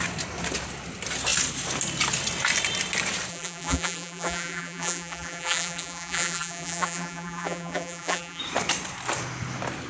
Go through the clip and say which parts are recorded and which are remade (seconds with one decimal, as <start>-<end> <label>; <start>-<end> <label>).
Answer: 0.0-3.3 recorded; 3.3-8.4 remade; 8.4-9.9 recorded